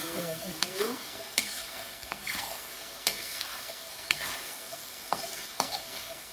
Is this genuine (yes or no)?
no